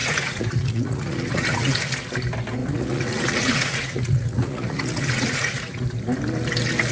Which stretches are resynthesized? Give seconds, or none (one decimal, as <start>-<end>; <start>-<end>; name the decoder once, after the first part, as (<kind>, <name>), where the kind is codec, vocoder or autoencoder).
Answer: 0.0-1.8 (vocoder, Vocos); 2.6-5.8